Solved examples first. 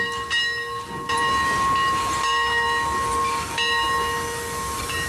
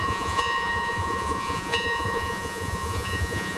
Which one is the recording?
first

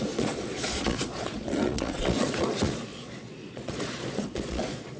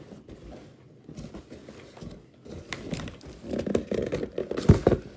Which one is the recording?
second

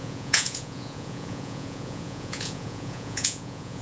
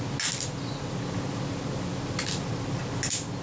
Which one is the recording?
second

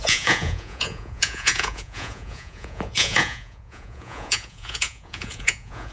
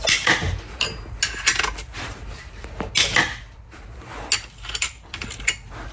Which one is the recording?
second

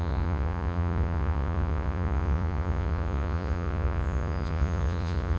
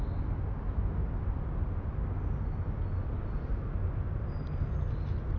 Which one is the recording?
second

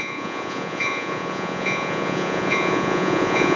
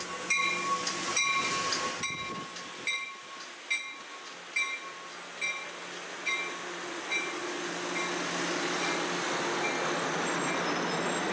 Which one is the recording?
second